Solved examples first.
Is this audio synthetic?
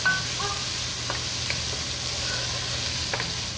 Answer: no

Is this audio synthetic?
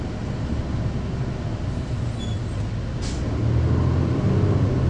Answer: no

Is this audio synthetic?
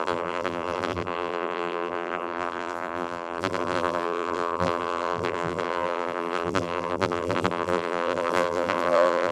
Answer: yes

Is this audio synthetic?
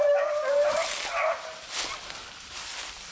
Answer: no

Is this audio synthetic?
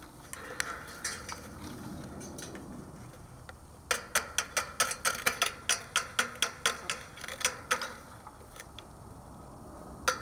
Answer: no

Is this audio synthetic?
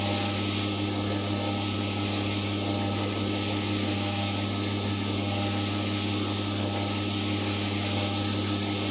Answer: no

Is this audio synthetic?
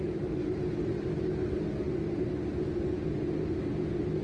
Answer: no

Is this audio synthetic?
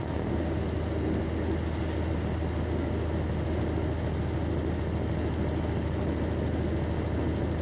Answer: no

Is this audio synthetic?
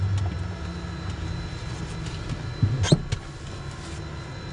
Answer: no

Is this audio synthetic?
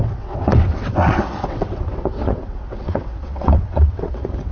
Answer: yes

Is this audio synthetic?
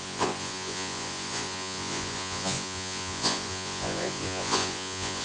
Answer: yes